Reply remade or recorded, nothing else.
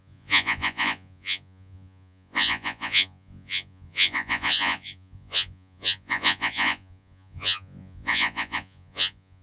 remade